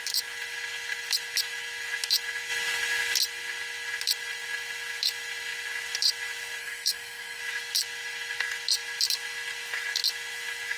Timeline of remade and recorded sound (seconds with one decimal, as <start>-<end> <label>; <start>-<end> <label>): 0.0-6.6 recorded; 6.6-7.4 remade; 7.4-10.8 recorded